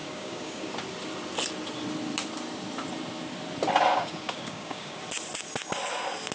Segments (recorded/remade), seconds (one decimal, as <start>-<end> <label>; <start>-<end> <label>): 0.0-0.7 remade; 0.7-3.9 recorded; 3.9-5.0 remade; 5.0-6.3 recorded

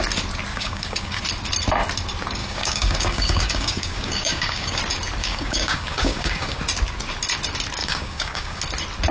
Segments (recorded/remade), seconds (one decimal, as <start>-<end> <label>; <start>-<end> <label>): 0.0-0.5 recorded; 0.5-1.2 remade; 1.2-2.4 recorded; 2.4-4.8 remade; 4.8-5.2 recorded; 5.2-6.6 remade; 6.6-7.8 recorded; 7.8-8.6 remade; 8.6-9.1 recorded

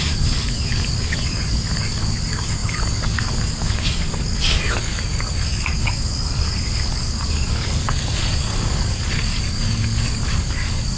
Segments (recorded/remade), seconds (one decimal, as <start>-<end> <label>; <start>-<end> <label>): 0.0-11.0 remade

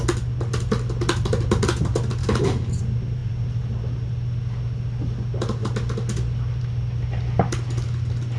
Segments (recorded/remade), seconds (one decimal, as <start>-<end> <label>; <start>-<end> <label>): 0.0-2.2 recorded; 2.2-2.8 remade; 2.8-8.4 recorded

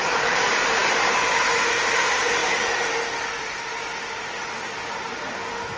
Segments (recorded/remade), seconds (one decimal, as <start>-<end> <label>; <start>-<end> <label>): 0.0-5.8 recorded

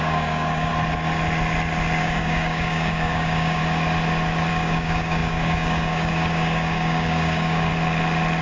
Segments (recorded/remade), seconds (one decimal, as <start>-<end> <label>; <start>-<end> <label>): 0.0-0.7 remade; 0.7-2.0 recorded; 2.0-3.6 remade; 3.6-4.5 recorded; 4.5-7.7 remade; 7.7-8.4 recorded

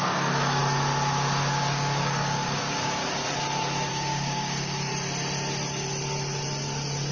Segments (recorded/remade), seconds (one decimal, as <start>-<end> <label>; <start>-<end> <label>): 0.0-0.6 remade; 0.6-1.5 recorded; 1.5-3.0 remade; 3.0-3.9 recorded; 3.9-4.9 remade; 4.9-7.1 recorded

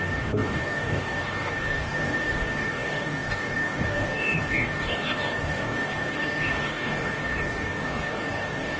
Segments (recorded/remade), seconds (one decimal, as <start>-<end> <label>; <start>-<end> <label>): 0.0-8.8 remade